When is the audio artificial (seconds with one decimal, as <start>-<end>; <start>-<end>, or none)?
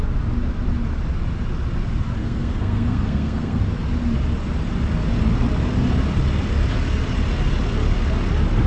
2.2-3.6